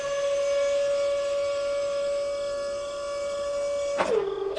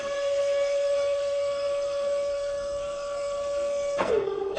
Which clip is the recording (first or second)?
first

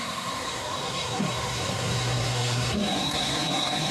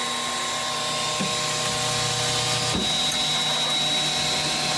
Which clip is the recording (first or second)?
second